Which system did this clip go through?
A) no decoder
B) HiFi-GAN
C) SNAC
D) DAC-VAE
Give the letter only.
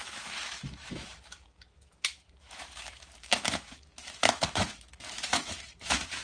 D